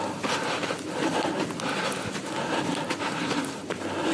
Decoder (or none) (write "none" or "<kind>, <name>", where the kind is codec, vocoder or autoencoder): none